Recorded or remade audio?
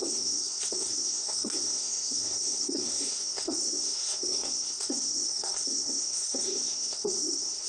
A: remade